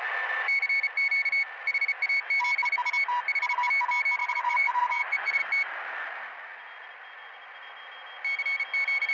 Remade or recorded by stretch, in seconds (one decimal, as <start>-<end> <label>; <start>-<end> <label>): 0.0-4.2 recorded; 4.2-5.4 remade; 5.4-9.1 recorded